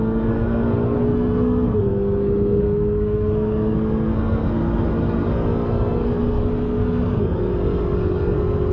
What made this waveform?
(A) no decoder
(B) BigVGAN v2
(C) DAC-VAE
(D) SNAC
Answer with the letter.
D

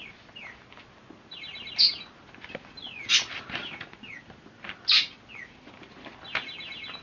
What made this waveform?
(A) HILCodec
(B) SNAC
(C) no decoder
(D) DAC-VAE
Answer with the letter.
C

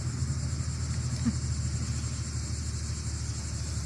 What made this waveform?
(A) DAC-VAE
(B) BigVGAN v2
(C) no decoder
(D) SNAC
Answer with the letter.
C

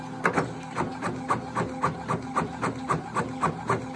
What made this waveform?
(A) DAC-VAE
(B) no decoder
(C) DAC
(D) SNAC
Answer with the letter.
B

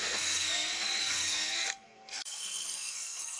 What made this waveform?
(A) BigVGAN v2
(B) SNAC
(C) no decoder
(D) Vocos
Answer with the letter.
B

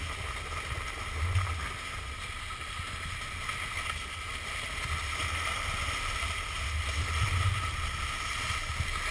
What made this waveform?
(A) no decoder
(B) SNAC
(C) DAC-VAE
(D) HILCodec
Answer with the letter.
A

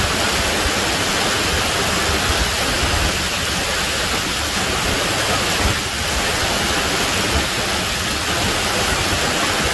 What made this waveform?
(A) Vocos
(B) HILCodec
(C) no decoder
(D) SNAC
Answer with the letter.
C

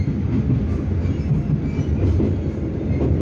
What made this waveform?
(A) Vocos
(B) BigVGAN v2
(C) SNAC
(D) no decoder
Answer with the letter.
D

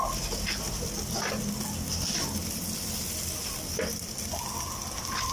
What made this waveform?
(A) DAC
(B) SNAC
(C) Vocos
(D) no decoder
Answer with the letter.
D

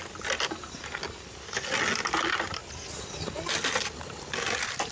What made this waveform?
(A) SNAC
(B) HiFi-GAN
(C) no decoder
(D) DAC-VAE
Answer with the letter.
C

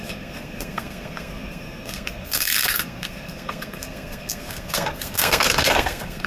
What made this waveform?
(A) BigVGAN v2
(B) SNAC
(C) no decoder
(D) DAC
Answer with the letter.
B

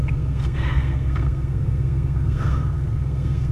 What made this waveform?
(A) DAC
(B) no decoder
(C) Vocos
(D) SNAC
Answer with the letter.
D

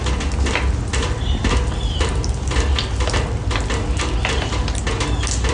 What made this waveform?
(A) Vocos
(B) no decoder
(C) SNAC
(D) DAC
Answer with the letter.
B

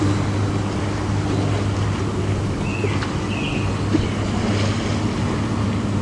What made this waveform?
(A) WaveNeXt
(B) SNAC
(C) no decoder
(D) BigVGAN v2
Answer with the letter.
C